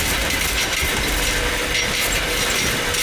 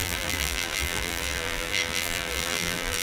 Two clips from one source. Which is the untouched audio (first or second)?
first